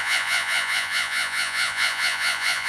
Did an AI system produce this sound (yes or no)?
yes